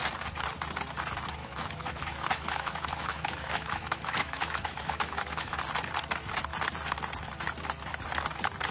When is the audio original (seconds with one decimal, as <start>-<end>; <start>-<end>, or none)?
0.0-1.4; 5.6-8.7